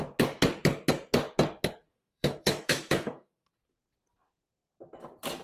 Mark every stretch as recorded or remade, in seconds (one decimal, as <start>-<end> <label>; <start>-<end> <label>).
0.0-1.9 recorded; 1.9-3.5 remade; 3.5-5.4 recorded

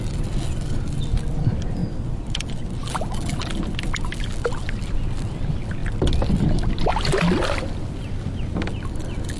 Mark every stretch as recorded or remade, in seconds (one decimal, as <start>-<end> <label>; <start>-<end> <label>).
0.0-9.4 recorded

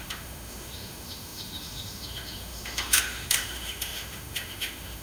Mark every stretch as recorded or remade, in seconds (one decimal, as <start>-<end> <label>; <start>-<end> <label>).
0.0-5.0 remade